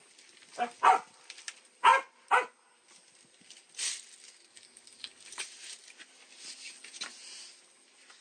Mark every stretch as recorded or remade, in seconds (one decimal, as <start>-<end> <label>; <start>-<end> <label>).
0.0-4.5 recorded; 4.5-5.4 remade; 5.4-8.2 recorded